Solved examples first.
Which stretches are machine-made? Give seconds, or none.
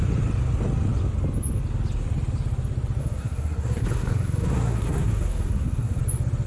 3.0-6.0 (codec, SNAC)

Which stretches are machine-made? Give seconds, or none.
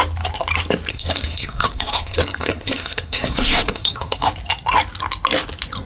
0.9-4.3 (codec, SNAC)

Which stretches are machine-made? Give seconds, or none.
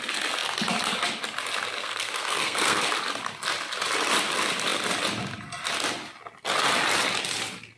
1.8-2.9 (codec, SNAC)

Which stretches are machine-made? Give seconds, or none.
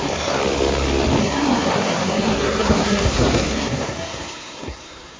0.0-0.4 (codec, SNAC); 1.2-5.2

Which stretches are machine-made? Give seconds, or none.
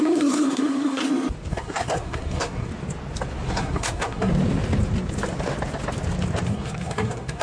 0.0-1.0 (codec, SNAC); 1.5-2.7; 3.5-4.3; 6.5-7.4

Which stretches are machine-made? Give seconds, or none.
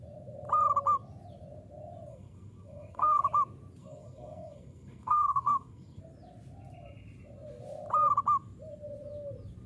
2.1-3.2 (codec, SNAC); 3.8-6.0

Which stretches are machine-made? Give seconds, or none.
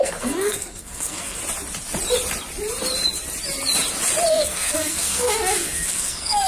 0.0-1.4 (codec, SNAC); 4.3-6.5